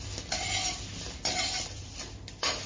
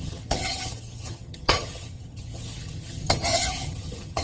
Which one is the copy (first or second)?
second